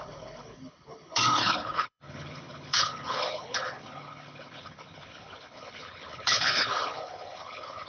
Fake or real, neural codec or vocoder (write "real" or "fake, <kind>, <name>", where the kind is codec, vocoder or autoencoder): fake, codec, HILCodec